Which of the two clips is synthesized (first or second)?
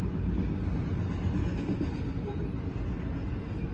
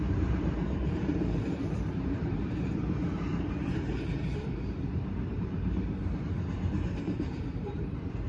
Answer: second